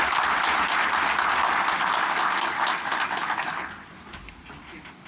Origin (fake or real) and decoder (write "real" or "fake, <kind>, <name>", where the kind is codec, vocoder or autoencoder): real